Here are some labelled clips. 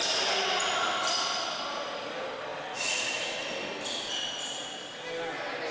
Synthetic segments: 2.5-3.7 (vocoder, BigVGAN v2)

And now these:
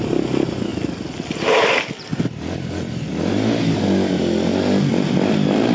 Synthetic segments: none

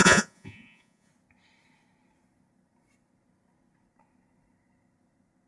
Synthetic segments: 0.0-1.1 (vocoder, Vocos)

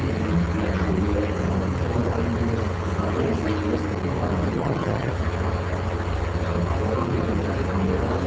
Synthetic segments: 4.5-5.1 (vocoder, HiFi-GAN)

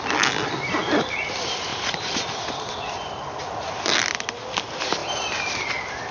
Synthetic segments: 1.7-2.9 (vocoder, BigVGAN v2); 5.0-6.1

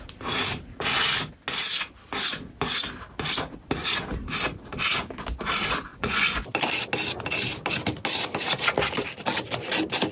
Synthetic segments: 5.9-6.4 (vocoder, Vocos)